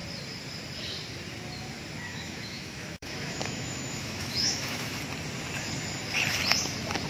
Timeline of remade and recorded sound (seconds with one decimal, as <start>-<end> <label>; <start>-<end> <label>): 0.0-2.1 recorded; 2.1-5.0 remade; 5.0-7.1 recorded